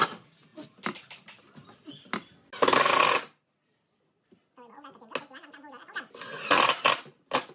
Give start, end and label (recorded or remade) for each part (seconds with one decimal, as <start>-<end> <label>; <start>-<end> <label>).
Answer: 0.0-7.5 recorded

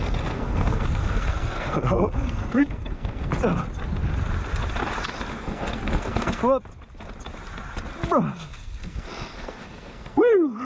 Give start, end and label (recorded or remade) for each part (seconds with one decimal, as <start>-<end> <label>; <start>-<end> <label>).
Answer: 0.0-3.3 remade; 3.3-5.3 recorded; 5.3-6.4 remade; 6.4-8.3 recorded; 8.3-10.6 remade

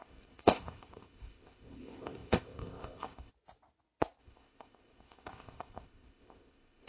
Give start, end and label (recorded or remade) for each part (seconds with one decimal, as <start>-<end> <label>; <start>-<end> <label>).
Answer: 0.0-3.3 remade; 3.3-4.2 recorded; 4.2-6.9 remade

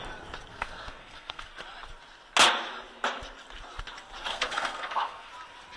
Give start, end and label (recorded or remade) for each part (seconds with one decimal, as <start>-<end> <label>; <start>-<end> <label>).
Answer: 0.0-0.5 recorded; 0.5-1.5 remade; 1.5-4.3 recorded; 4.3-5.3 remade; 5.3-5.8 recorded

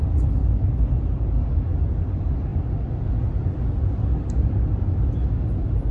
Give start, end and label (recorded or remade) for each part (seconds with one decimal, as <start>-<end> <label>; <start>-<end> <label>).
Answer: 0.0-5.9 recorded

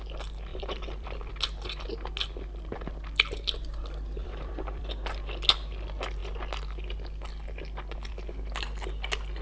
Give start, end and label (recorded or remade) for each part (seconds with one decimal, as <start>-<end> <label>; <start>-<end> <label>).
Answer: 0.0-0.5 recorded; 0.5-1.2 remade; 1.2-4.2 recorded; 4.2-4.9 remade; 4.9-9.4 recorded

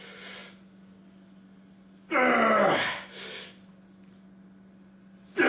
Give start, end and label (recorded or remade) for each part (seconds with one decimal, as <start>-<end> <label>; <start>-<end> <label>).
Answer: 0.0-5.5 recorded